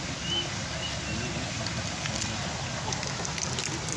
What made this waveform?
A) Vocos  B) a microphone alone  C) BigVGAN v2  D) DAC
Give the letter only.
B